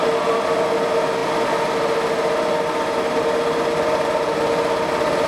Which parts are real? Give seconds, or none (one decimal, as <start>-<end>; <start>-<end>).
0.0-5.3